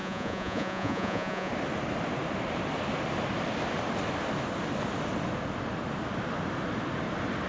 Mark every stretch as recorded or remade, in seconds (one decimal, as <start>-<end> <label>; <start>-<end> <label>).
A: 0.0-1.5 remade; 1.5-7.5 recorded